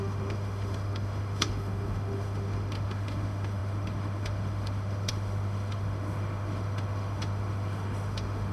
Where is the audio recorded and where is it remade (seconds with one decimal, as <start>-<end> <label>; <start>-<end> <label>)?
0.0-8.5 remade